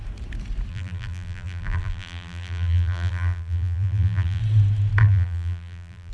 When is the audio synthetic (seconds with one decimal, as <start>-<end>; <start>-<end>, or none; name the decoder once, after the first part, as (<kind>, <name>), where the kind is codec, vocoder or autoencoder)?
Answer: 0.7-4.4 (vocoder, BigVGAN v2); 5.0-6.1